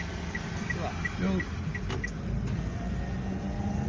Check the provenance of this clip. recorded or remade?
recorded